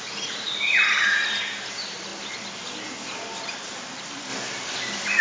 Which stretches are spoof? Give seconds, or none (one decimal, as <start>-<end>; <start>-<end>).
0.0-2.1; 3.4-4.3